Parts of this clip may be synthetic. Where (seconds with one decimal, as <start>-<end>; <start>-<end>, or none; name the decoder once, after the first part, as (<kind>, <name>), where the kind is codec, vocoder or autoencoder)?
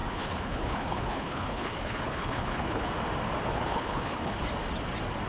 0.0-2.9 (codec, HILCodec); 3.5-4.4